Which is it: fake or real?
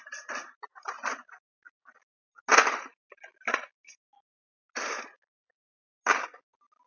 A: real